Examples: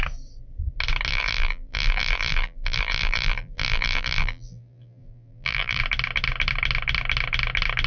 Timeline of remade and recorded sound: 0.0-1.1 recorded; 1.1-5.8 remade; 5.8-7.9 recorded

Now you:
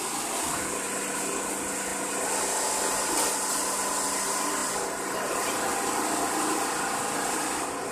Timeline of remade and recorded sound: 0.0-7.9 recorded